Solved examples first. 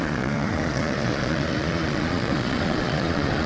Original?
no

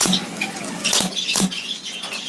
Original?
no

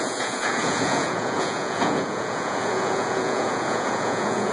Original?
no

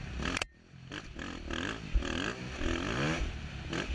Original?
yes